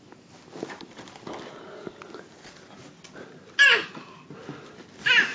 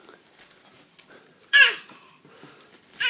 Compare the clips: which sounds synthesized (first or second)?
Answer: second